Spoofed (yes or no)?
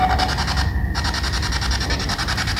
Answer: no